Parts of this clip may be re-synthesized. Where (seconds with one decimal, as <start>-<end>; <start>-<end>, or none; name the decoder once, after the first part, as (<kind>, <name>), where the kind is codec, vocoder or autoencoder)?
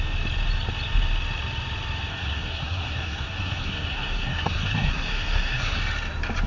2.1-5.8 (codec, SNAC)